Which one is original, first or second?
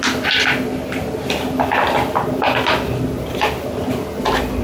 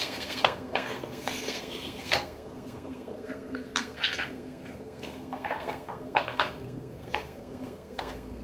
first